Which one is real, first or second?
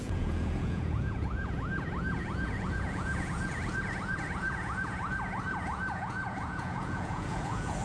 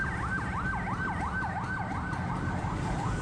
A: second